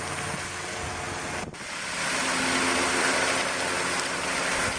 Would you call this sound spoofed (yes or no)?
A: no